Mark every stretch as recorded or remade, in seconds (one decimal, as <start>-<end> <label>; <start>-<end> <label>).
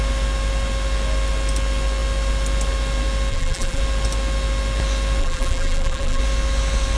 0.0-3.3 recorded; 3.3-3.8 remade; 3.8-5.2 recorded; 5.2-6.2 remade; 6.2-7.0 recorded